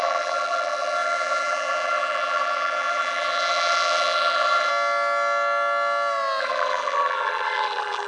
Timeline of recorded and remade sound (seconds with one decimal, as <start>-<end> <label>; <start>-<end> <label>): 0.0-4.7 remade; 4.7-6.4 recorded; 6.4-8.1 remade